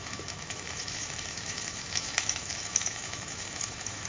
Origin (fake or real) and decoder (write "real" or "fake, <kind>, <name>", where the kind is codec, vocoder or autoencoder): fake, autoencoder, DAC-VAE